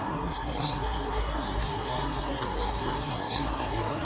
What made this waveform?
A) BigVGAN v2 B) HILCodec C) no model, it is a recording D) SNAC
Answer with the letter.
D